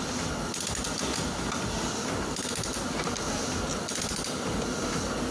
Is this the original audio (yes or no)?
yes